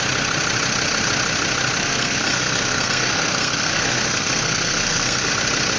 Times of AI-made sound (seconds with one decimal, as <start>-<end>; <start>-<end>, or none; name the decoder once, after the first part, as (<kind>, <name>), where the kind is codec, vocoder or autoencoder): 1.8-5.3 (codec, SNAC)